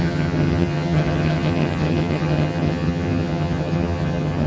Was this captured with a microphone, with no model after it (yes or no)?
no